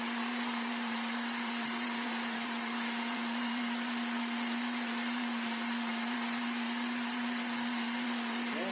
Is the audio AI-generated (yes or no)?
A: yes